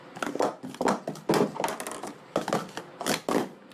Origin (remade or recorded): recorded